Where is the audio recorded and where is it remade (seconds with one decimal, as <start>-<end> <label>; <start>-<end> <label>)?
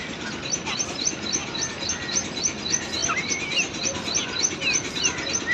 0.0-5.5 recorded